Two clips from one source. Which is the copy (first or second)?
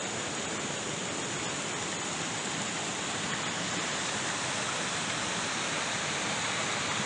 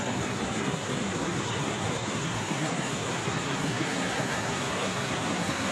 second